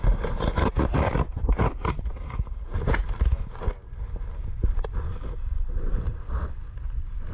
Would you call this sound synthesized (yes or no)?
no